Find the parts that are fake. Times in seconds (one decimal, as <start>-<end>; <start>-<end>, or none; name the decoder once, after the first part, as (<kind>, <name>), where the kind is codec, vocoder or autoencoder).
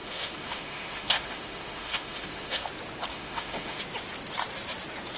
0.0-2.7 (autoencoder, DAC-VAE); 3.1-3.8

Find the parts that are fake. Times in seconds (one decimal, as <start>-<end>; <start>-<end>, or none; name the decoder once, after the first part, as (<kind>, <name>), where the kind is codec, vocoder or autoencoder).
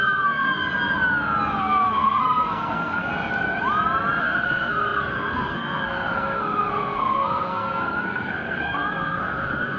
0.0-0.6 (codec, SNAC); 1.6-3.1; 4.2-9.8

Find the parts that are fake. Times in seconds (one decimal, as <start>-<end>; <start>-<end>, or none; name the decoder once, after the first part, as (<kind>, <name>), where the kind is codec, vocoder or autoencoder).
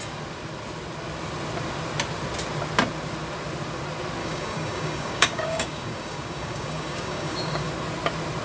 4.2-7.7 (codec, DAC)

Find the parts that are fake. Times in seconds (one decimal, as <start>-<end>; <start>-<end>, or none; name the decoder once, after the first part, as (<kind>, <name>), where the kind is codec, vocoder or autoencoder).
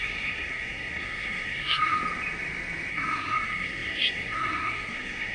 0.0-2.0 (codec, SNAC); 2.9-5.3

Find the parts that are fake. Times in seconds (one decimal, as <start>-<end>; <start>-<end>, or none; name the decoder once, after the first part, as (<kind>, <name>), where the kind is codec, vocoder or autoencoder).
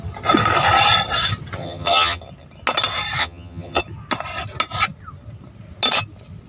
1.6-2.2 (vocoder, HiFi-GAN); 3.2-3.8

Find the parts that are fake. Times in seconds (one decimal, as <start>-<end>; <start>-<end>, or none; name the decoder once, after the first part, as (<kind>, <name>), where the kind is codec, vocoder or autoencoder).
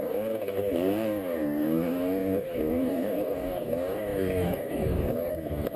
0.0-5.8 (codec, DAC)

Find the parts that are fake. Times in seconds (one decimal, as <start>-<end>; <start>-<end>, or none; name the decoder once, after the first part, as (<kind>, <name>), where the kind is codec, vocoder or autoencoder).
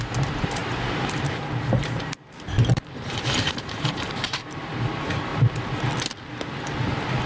0.0-5.3 (vocoder, BigVGAN v2)